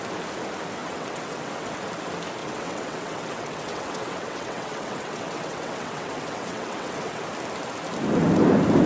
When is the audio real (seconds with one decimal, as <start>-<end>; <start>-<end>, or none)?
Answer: 0.0-0.8; 1.7-2.4; 7.2-8.9